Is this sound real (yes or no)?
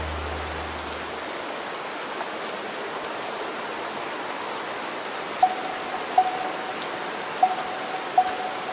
yes